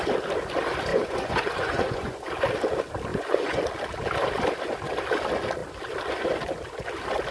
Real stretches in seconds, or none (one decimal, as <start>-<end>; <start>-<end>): 0.0-0.9; 2.3-3.1; 3.6-7.3